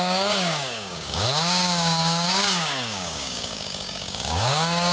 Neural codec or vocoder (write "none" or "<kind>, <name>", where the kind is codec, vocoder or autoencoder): codec, DAC